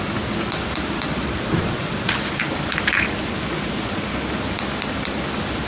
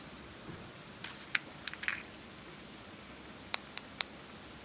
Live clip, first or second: second